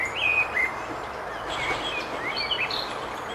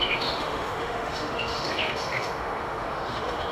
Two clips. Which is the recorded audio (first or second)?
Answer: first